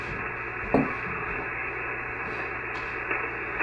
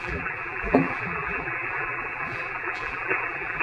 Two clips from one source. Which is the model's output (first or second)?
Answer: second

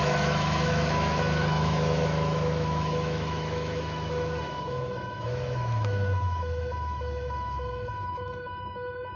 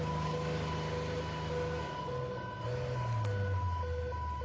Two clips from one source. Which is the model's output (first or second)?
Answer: first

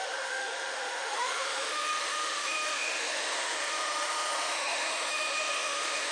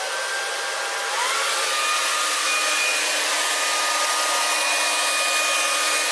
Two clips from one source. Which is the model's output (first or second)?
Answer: first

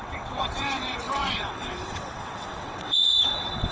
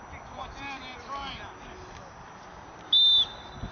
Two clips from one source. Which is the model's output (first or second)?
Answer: first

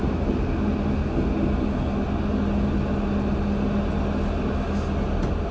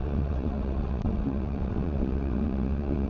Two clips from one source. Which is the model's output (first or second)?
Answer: second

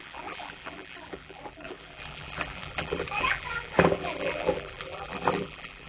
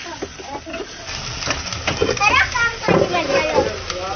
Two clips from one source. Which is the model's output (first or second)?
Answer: first